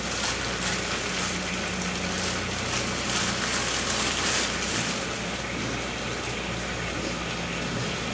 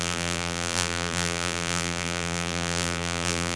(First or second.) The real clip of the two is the first